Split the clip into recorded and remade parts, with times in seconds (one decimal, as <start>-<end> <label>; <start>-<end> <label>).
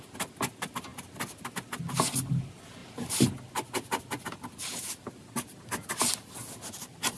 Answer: 0.0-7.2 recorded